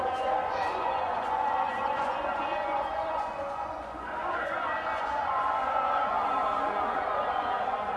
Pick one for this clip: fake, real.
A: fake